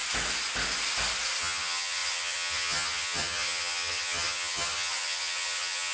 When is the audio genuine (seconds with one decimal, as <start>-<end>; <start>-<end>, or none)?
0.0-1.4